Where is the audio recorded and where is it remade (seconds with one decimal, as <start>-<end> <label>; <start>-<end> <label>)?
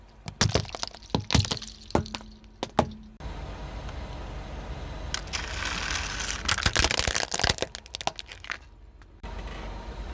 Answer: 0.0-10.1 recorded